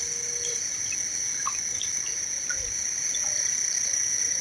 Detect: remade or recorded recorded